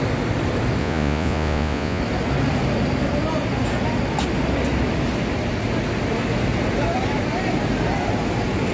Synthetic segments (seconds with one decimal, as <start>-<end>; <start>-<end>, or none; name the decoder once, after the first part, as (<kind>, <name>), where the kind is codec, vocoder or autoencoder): 0.8-2.0 (vocoder, Vocos)